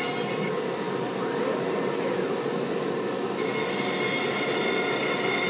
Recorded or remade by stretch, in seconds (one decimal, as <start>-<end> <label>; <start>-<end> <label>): 0.0-5.5 recorded